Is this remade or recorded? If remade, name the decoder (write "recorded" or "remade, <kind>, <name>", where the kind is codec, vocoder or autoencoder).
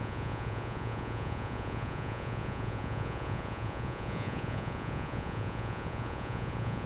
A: remade, vocoder, Vocos